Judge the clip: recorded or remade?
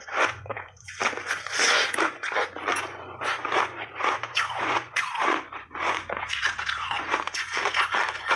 remade